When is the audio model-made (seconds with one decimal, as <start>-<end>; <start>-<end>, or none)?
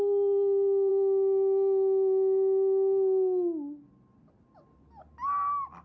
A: none